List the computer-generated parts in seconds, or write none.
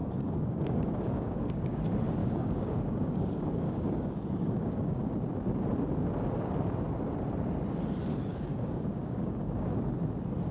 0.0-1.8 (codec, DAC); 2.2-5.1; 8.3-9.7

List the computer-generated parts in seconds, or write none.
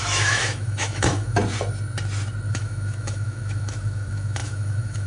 0.0-1.4 (autoencoder, DAC-VAE); 2.5-5.1